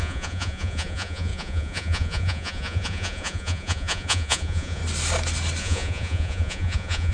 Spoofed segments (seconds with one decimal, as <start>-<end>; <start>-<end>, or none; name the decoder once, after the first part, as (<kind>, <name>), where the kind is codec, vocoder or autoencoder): 0.0-4.8 (vocoder, Vocos); 5.6-7.1